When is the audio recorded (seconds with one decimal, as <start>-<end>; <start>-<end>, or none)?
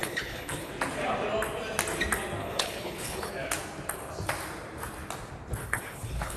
0.7-2.4; 3.3-5.6